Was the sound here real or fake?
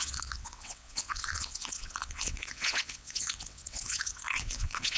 fake